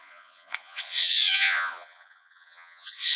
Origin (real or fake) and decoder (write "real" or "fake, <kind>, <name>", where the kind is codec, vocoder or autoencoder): fake, vocoder, Vocos